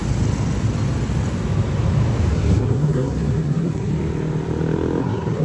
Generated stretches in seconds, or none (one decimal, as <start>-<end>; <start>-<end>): 2.3-3.9; 5.0-5.4